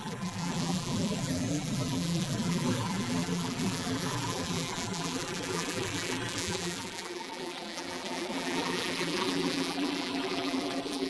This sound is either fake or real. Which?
fake